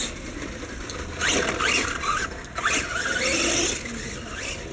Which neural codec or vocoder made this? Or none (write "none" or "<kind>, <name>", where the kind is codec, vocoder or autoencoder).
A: none